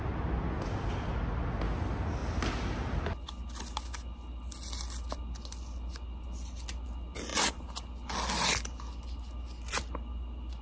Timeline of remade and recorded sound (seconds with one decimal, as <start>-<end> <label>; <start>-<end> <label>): 0.0-10.6 recorded